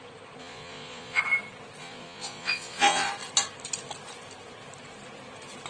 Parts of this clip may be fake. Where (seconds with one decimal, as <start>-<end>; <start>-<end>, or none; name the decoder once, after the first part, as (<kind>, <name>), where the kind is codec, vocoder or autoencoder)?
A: 0.4-1.2 (vocoder, Vocos); 1.8-3.1